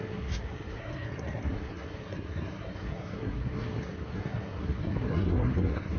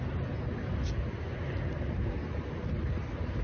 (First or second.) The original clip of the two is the second